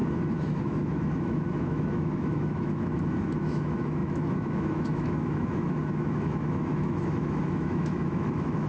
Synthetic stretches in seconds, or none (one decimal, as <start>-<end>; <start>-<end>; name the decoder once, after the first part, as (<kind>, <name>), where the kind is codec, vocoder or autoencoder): 0.0-8.7 (autoencoder, DAC-VAE)